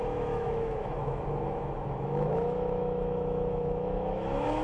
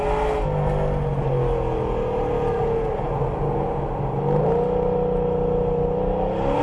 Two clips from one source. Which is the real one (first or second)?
second